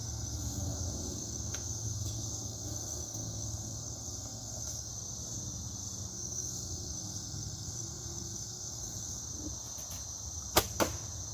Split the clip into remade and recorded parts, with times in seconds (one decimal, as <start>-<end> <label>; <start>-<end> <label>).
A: 0.0-4.9 remade; 4.9-6.1 recorded; 6.1-9.2 remade; 9.2-11.3 recorded